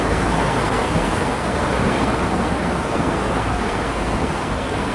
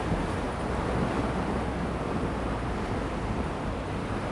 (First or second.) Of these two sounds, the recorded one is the second